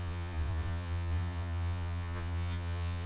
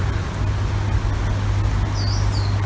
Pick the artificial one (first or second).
first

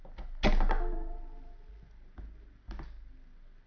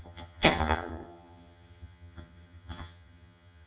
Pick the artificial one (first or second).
second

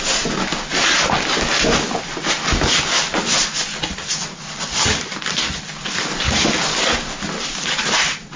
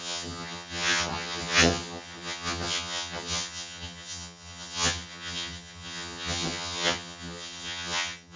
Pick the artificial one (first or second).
second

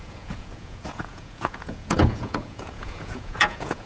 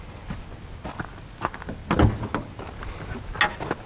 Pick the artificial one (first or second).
first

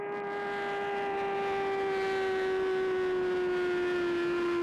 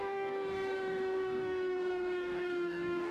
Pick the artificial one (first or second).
second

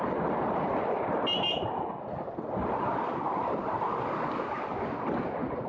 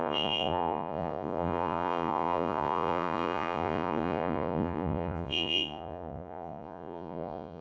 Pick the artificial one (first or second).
second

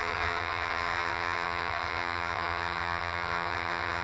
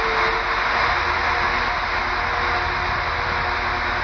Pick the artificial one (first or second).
first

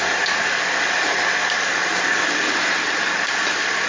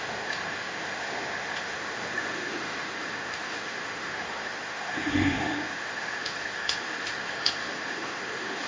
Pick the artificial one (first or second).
second